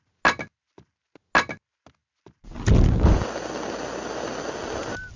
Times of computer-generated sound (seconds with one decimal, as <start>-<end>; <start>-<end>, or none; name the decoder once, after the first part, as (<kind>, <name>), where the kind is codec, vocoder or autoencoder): none